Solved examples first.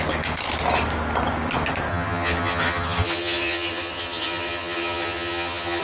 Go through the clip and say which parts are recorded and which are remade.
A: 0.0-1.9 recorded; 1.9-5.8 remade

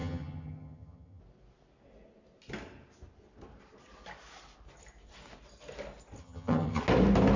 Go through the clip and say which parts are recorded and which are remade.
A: 0.0-1.2 remade; 1.2-6.2 recorded; 6.2-6.8 remade; 6.8-7.4 recorded

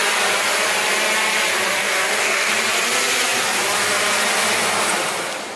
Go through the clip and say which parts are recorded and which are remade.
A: 0.0-1.8 recorded; 1.8-2.5 remade; 2.5-5.6 recorded

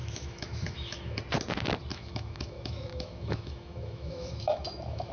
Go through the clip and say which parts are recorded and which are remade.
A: 0.0-1.2 remade; 1.2-1.9 recorded; 1.9-5.1 remade

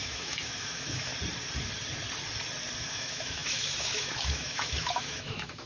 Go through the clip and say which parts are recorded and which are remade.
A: 0.0-1.1 remade; 1.1-2.9 recorded; 2.9-5.7 remade

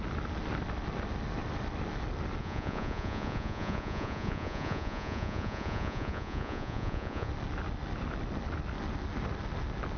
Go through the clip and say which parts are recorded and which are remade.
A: 0.0-2.4 recorded; 2.4-7.3 remade; 7.3-10.0 recorded

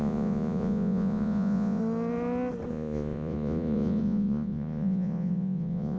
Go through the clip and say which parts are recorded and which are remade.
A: 0.0-1.8 remade; 1.8-2.7 recorded; 2.7-6.0 remade

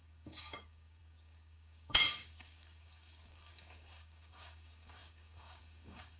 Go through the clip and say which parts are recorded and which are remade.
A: 0.0-6.2 remade